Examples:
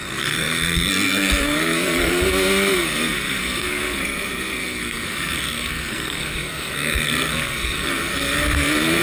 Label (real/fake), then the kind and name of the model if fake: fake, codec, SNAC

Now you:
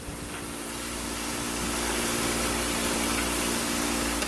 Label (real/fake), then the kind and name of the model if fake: real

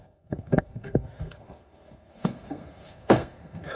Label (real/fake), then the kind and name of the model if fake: fake, codec, SNAC